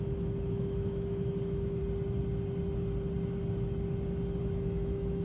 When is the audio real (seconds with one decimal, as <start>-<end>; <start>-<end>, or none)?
1.8-4.4